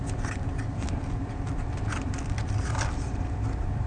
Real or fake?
fake